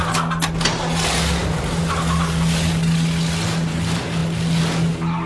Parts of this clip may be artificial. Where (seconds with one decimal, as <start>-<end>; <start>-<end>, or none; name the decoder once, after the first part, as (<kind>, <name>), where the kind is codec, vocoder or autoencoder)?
none